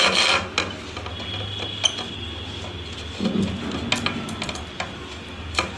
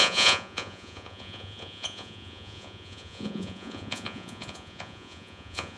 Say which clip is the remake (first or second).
second